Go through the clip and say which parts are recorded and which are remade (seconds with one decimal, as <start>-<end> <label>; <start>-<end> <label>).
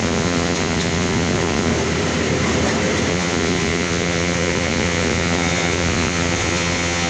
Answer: 0.0-1.7 remade; 1.7-3.1 recorded; 3.1-7.1 remade